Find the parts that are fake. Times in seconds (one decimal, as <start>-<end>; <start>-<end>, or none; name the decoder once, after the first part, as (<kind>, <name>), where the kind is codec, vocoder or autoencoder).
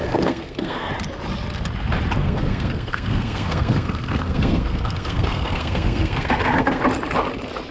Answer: 0.0-0.9 (codec, SNAC); 2.2-6.8